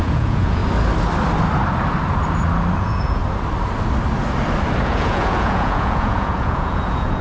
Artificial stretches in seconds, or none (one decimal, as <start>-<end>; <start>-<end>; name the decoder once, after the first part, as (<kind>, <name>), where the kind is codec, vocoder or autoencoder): 0.0-0.6 (vocoder, Vocos); 2.8-3.2; 4.8-7.2